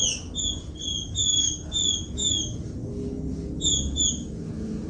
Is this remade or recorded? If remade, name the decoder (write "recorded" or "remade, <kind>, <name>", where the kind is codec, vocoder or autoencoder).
recorded